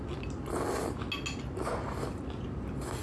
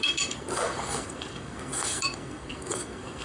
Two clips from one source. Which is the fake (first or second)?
second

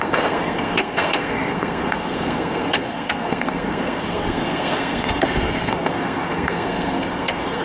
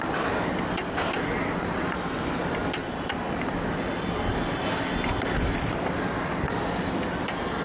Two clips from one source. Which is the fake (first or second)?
first